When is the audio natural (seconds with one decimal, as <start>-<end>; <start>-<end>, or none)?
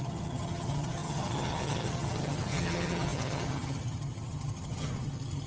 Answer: none